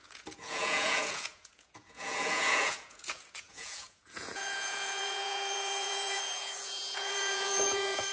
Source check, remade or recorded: remade